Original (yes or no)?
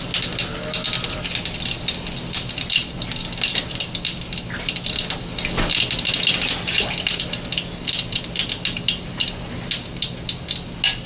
yes